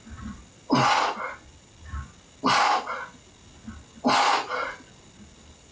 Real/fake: real